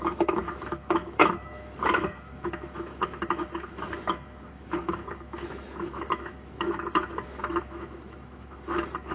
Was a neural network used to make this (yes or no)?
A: yes